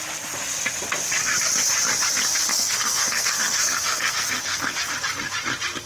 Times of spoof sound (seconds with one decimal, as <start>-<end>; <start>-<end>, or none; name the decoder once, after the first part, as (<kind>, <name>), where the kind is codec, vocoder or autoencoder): 2.5-4.8 (codec, SNAC)